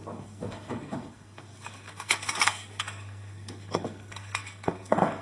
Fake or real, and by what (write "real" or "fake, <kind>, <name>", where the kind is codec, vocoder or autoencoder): fake, codec, SNAC